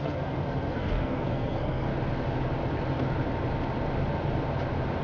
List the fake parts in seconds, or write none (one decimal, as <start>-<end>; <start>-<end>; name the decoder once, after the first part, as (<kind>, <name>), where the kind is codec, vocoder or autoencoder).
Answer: 0.0-1.9 (codec, SNAC)